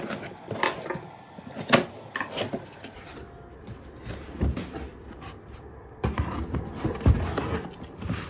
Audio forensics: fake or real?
real